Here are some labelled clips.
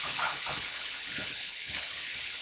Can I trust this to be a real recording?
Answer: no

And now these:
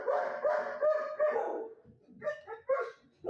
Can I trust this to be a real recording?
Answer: yes